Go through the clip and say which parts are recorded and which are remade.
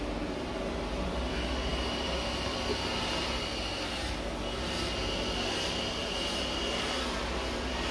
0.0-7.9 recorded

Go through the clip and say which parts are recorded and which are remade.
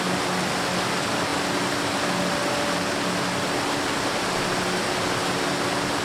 0.0-6.0 recorded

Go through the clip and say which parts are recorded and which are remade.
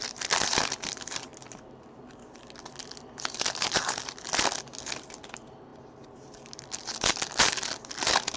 0.0-8.4 recorded